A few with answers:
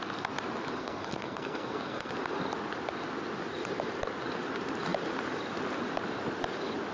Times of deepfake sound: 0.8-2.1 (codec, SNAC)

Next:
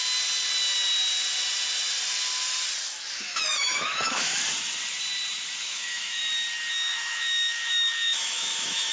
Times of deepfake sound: 3.2-4.4 (autoencoder, DAC-VAE); 5.6-6.2; 6.7-8.9

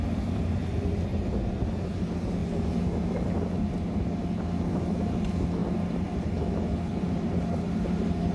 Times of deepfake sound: 1.1-1.7 (vocoder, BigVGAN v2); 5.6-7.7

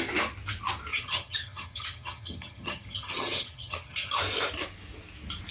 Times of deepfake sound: 0.9-4.2 (vocoder, HiFi-GAN)

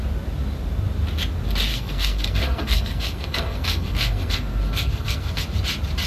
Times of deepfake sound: 1.7-5.4 (codec, SNAC)